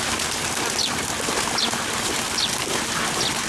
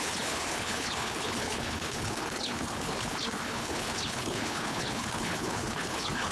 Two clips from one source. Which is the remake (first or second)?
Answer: second